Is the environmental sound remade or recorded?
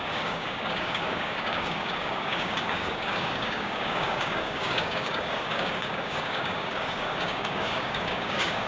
remade